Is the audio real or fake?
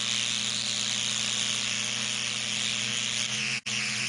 real